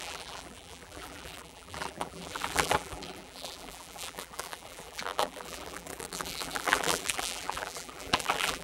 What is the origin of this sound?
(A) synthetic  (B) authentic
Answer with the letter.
A